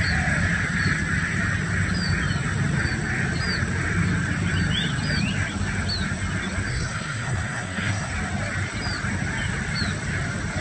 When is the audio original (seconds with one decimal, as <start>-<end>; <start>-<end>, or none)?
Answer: 0.0-6.7; 8.1-10.6